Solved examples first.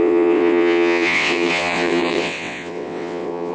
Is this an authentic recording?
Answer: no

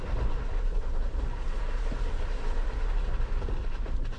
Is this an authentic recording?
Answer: yes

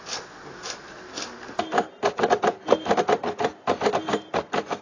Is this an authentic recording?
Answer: yes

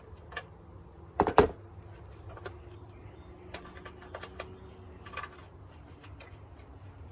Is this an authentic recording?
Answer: yes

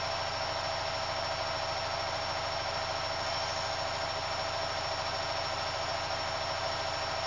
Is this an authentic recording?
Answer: yes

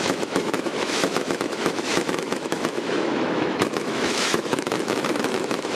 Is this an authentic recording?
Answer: no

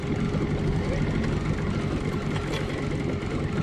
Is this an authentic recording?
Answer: yes